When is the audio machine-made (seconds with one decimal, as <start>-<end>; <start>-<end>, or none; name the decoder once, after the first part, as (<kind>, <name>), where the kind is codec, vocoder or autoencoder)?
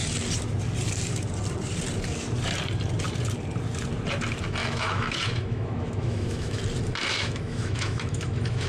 4.6-6.6 (autoencoder, DAC-VAE); 7.1-8.7